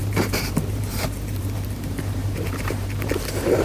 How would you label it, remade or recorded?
remade